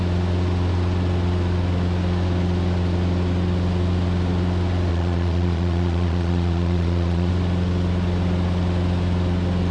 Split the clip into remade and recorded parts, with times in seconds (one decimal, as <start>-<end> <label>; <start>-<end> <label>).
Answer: 0.0-4.9 recorded; 4.9-7.3 remade; 7.3-9.7 recorded